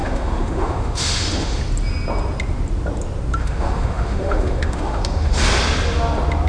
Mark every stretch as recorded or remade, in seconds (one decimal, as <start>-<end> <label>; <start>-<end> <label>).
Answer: 0.0-1.6 remade; 1.6-3.4 recorded; 3.4-5.4 remade; 5.4-6.5 recorded